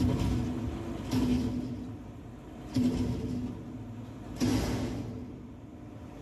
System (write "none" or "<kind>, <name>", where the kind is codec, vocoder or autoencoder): none